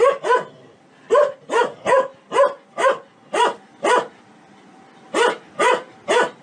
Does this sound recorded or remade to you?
recorded